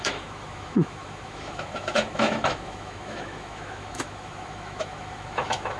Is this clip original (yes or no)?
no